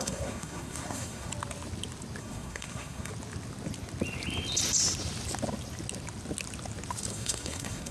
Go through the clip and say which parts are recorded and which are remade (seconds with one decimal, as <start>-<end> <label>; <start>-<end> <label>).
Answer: 0.0-1.3 remade; 1.3-2.2 recorded; 2.2-3.1 remade; 3.1-7.1 recorded; 7.1-7.9 remade